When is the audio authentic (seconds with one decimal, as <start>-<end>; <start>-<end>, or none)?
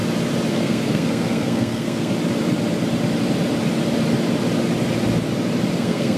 0.0-0.5; 2.1-5.8